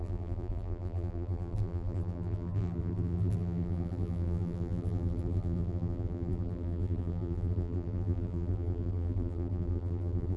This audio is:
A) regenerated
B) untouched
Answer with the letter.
A